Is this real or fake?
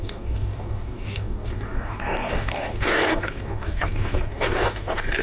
fake